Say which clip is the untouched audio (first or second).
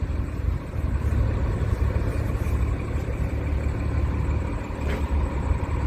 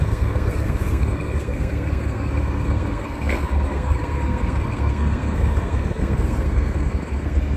first